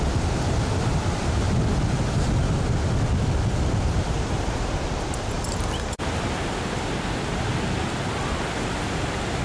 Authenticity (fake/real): real